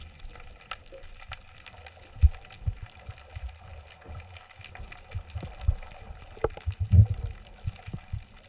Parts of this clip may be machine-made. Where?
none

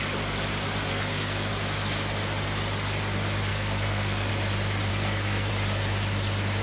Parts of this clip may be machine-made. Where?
0.9-1.5 (codec, SNAC); 3.5-4.3; 4.9-5.5

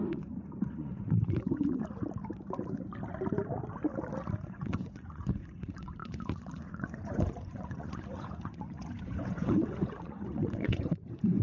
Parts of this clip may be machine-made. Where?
0.0-1.9 (vocoder, Vocos); 4.4-11.4